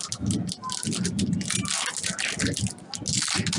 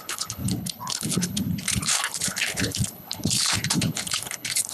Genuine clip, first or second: first